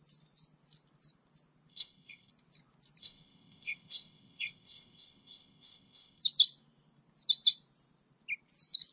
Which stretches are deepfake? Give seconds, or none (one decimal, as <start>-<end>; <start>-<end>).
1.7-2.3; 3.0-6.2